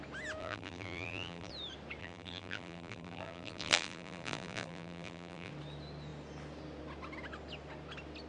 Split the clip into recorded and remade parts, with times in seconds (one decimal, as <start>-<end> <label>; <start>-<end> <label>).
0.0-0.4 recorded; 0.4-1.5 remade; 1.5-2.0 recorded; 2.0-5.5 remade; 5.5-8.3 recorded